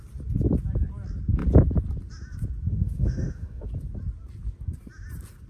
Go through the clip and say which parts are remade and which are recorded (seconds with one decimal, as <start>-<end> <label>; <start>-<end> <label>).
0.0-2.7 recorded; 2.7-3.7 remade; 3.7-5.5 recorded